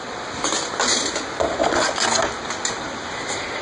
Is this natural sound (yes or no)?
yes